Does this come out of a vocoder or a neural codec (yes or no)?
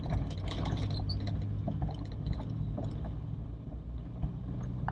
no